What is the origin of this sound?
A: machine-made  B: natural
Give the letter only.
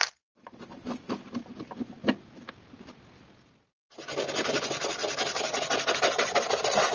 B